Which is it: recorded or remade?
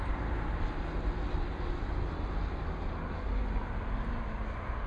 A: recorded